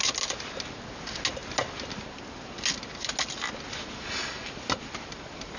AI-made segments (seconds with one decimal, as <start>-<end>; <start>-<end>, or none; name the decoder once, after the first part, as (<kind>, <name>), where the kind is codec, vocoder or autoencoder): none